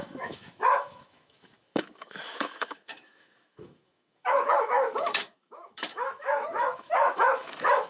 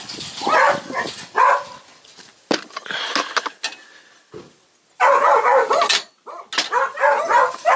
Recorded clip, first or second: second